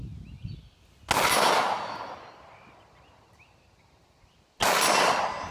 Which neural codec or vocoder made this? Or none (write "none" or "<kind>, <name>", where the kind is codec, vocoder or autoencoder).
none